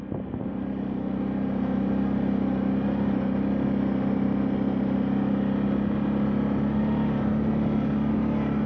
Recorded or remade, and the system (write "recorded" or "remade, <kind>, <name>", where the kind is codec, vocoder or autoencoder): recorded